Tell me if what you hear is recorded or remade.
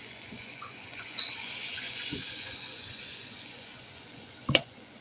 remade